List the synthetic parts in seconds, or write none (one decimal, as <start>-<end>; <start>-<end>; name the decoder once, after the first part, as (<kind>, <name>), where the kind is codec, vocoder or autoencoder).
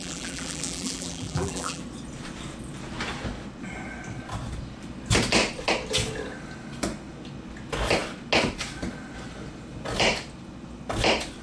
0.0-1.8 (vocoder, BigVGAN v2)